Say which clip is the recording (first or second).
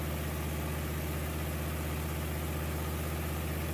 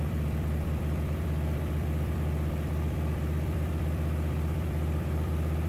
first